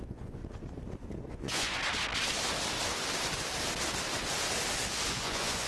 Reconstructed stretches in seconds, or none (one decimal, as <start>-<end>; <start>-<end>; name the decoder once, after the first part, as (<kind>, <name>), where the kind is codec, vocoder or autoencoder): 0.0-0.4 (vocoder, Vocos); 1.3-1.8; 5.1-5.7